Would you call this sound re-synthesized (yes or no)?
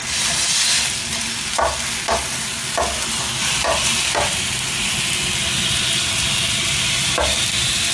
no